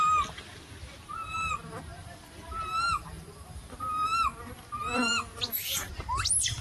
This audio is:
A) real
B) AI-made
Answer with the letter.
A